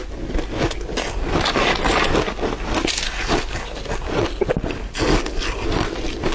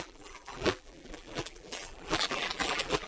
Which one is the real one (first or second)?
first